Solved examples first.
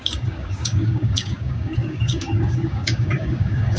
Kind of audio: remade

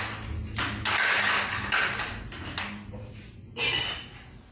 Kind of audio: recorded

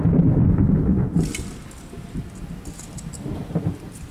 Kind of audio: recorded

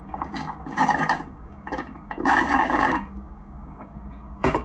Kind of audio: remade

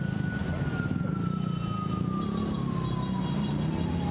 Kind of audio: recorded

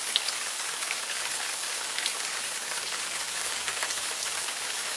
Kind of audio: remade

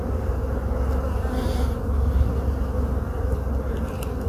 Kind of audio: recorded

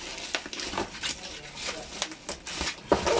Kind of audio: recorded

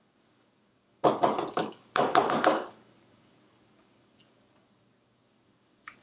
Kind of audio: remade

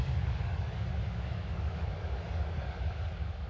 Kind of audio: remade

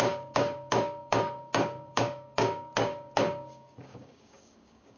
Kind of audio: remade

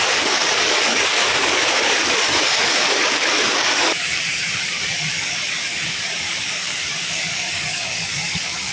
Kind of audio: remade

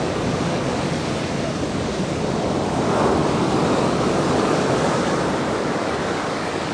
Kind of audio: remade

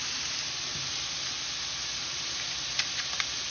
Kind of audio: recorded